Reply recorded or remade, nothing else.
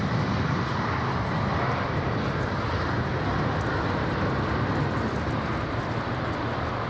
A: recorded